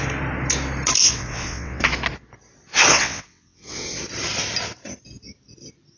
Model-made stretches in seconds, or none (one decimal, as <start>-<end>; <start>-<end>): 1.0-1.8; 2.9-4.0

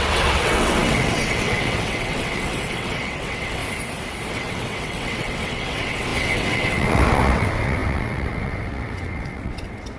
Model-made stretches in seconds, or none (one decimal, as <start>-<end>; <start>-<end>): 0.0-3.6; 4.3-10.0

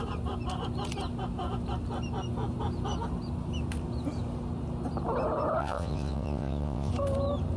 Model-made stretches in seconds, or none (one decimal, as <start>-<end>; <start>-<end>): 5.6-6.9

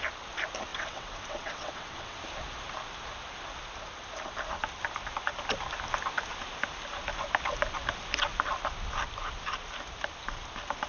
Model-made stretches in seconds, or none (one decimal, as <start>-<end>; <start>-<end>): 0.7-2.2